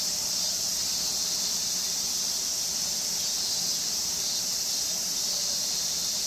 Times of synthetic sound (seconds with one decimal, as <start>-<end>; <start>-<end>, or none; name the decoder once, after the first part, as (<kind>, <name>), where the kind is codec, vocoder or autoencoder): none